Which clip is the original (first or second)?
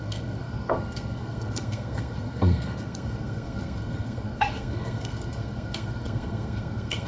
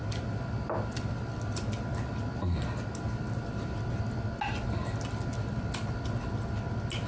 second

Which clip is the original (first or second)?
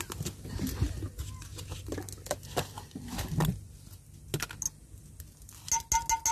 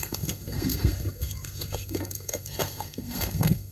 first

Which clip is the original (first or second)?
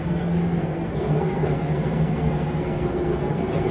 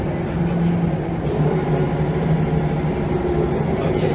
second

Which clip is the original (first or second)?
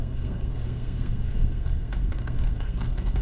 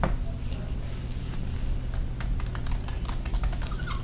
second